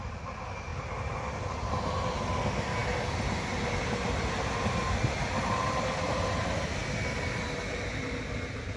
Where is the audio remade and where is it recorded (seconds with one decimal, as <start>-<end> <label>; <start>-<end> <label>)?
0.0-8.8 recorded